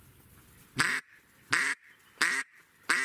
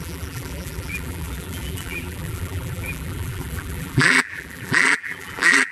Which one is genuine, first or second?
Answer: first